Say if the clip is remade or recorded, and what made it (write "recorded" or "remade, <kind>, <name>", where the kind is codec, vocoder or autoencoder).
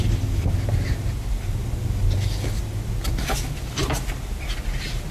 recorded